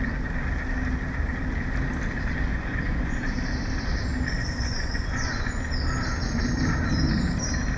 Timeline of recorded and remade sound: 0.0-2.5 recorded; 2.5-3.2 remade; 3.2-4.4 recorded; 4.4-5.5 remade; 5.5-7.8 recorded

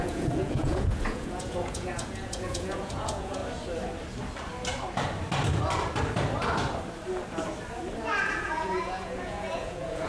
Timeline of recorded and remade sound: 0.0-3.4 remade; 3.4-8.2 recorded; 8.2-10.1 remade

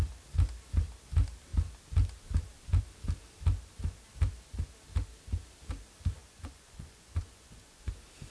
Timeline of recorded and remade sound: 0.0-6.2 recorded; 6.2-7.9 remade; 7.9-8.3 recorded

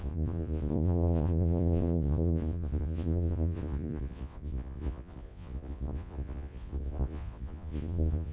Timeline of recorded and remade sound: 0.0-8.3 remade

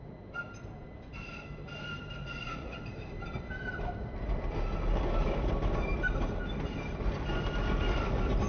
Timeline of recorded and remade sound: 0.0-2.2 recorded; 2.2-2.8 remade; 2.8-8.5 recorded

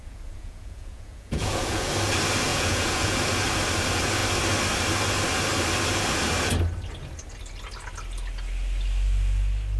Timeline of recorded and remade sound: 0.0-1.9 remade; 1.9-2.5 recorded; 2.5-3.2 remade; 3.2-9.8 recorded